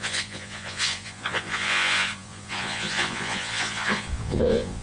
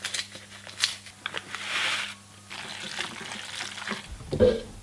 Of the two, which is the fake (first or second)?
first